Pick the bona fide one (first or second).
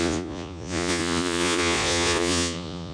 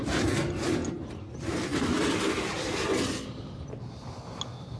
second